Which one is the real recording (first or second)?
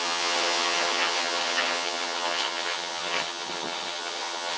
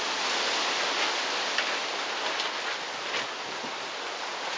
second